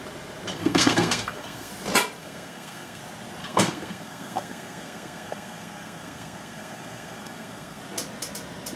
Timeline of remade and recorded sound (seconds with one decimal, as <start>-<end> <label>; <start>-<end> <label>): 0.0-0.5 recorded; 0.5-1.7 remade; 1.7-2.2 recorded; 2.2-3.0 remade; 3.0-3.4 recorded; 3.4-7.8 remade; 7.8-8.8 recorded